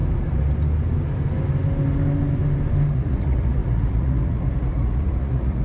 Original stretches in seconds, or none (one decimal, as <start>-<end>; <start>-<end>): 0.0-2.9